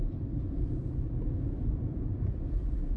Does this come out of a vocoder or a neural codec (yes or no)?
no